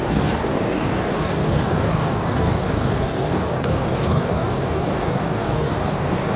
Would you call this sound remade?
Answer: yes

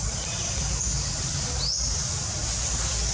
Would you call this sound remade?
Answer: no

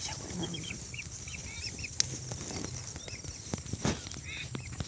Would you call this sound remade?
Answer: no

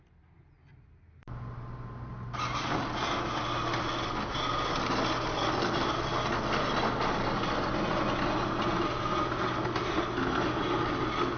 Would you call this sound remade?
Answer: no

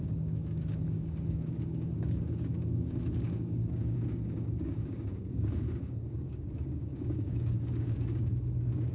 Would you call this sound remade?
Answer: yes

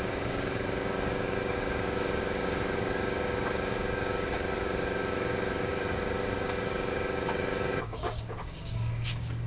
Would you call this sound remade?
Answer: yes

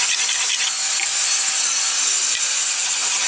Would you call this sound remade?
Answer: no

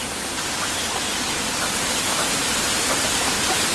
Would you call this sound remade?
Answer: no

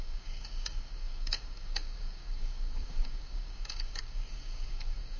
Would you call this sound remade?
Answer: yes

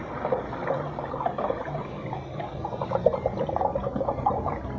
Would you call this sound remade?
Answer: no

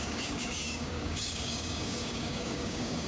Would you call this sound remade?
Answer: yes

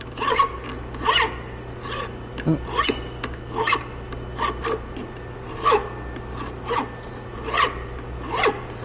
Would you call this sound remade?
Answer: no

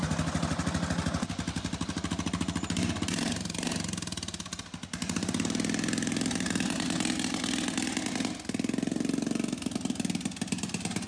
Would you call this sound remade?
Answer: no